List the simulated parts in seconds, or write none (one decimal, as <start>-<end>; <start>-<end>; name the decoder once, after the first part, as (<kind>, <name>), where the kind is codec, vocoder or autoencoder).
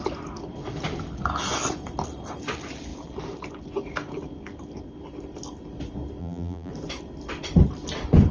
6.2-6.7 (vocoder, BigVGAN v2)